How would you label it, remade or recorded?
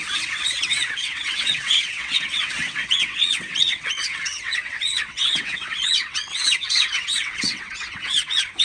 remade